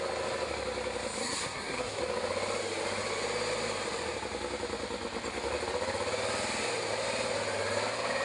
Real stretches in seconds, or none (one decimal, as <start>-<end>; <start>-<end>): 0.0-1.2; 2.0-8.2